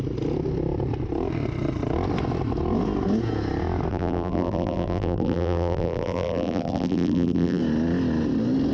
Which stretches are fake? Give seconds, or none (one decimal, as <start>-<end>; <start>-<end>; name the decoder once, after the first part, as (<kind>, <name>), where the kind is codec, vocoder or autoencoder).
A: 3.9-7.6 (vocoder, BigVGAN v2)